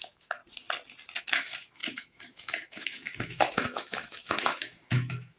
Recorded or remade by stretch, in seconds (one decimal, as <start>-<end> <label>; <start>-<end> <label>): 0.0-0.4 remade; 0.4-1.2 recorded; 1.2-5.4 remade